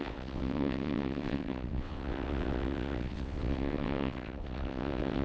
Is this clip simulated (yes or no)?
yes